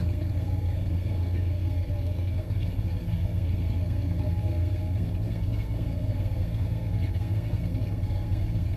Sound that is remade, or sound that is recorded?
remade